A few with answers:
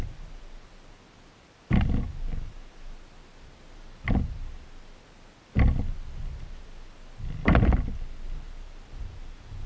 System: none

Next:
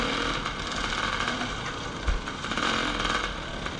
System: none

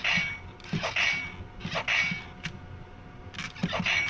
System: none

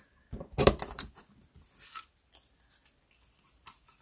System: none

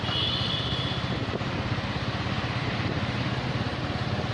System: vocoder, BigVGAN v2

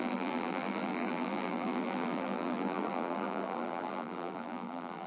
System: vocoder, BigVGAN v2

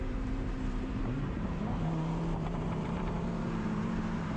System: vocoder, BigVGAN v2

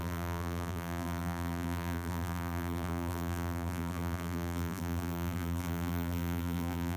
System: vocoder, BigVGAN v2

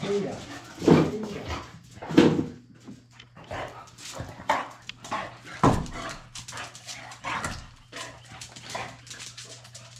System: none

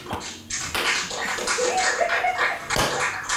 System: none